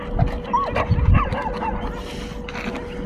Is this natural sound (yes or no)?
yes